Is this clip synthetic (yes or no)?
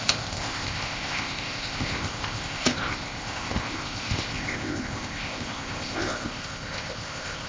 yes